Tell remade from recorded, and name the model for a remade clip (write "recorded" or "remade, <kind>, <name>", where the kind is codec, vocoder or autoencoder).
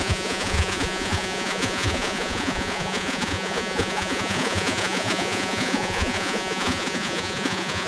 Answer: remade, vocoder, Vocos